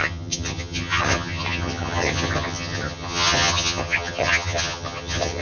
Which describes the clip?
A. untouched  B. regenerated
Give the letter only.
B